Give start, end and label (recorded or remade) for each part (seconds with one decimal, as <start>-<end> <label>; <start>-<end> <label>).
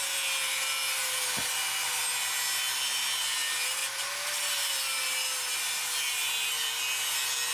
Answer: 0.0-1.5 recorded; 1.5-2.0 remade; 2.0-3.8 recorded; 3.8-4.8 remade; 4.8-7.5 recorded